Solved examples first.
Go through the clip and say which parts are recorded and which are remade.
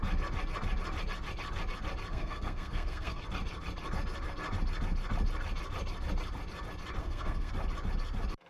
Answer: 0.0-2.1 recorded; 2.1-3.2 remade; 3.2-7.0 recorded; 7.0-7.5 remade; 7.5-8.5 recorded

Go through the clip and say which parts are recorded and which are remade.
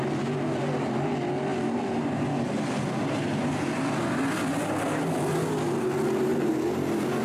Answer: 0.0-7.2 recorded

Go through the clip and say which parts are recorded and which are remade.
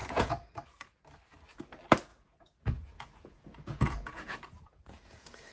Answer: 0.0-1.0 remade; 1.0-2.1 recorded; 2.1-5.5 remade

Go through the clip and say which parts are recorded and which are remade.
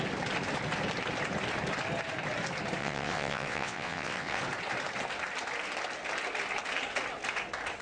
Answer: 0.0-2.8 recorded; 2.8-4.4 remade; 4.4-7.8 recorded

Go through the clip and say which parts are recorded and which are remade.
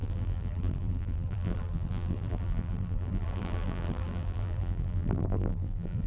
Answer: 0.0-6.1 remade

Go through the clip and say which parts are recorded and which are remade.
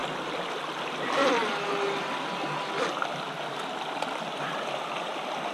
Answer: 0.0-5.5 recorded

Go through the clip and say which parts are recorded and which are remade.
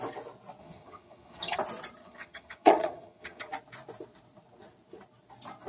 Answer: 0.0-0.6 recorded; 0.6-1.6 remade; 1.6-2.0 recorded; 2.0-3.5 remade; 3.5-5.7 recorded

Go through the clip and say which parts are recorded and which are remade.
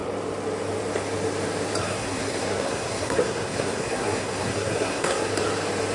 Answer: 0.0-1.8 recorded; 1.8-5.3 remade; 5.3-5.9 recorded